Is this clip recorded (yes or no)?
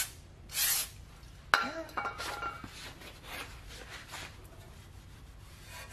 yes